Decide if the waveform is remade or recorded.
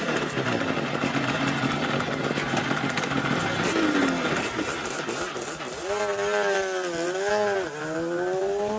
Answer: recorded